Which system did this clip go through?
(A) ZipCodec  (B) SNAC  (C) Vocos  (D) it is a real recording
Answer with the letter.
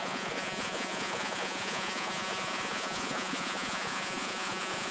C